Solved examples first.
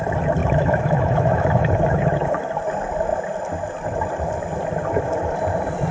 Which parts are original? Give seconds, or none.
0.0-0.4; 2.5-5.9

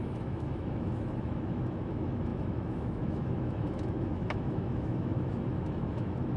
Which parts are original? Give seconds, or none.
none

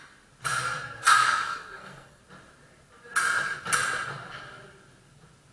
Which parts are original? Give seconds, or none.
0.0-1.1; 2.2-5.5